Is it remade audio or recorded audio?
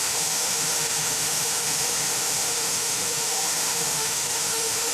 remade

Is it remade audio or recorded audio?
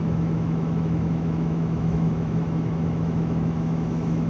remade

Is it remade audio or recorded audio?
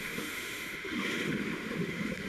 remade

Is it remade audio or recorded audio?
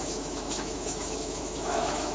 remade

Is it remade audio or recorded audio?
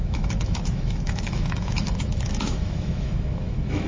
remade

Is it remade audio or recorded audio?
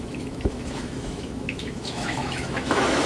remade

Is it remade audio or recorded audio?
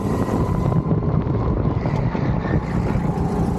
recorded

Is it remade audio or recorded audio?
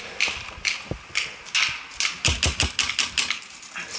recorded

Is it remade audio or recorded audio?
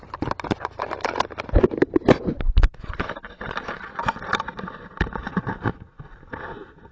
recorded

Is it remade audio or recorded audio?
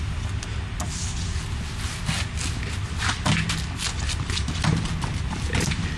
recorded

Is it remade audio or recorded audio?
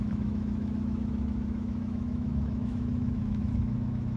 remade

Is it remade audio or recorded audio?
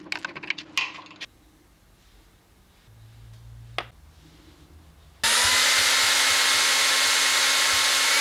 recorded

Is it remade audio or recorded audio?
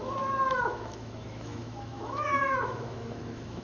remade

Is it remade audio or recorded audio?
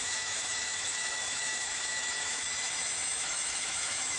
remade